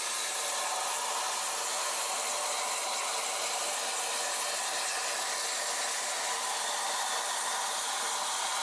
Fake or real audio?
real